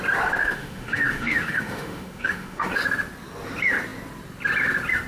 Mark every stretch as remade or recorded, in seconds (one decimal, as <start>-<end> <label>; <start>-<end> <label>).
0.0-0.4 recorded; 0.4-2.8 remade; 2.8-5.1 recorded